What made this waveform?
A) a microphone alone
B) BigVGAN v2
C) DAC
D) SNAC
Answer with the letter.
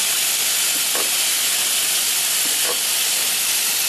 A